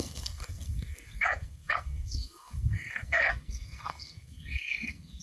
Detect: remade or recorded remade